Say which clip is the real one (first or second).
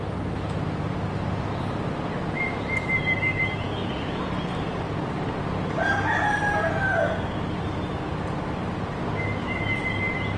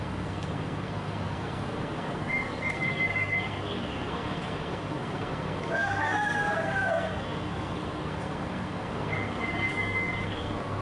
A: first